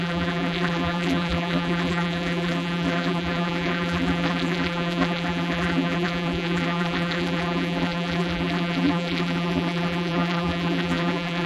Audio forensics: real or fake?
fake